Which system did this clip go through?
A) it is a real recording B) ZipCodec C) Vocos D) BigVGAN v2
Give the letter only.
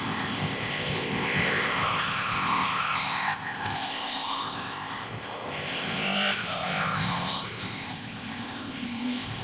B